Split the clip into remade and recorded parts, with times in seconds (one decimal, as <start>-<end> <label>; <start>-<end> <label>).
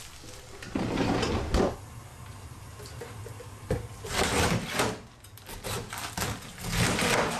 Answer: 0.0-2.1 recorded; 2.1-3.8 remade; 3.8-7.4 recorded